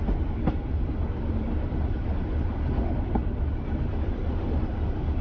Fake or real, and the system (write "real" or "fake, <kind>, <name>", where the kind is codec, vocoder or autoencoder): real